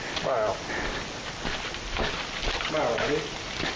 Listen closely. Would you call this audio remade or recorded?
recorded